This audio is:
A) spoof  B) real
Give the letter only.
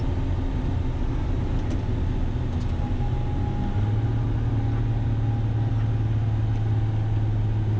B